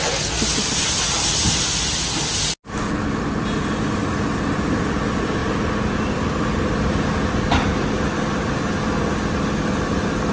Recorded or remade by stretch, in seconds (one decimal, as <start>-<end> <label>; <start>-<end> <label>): 0.0-10.3 recorded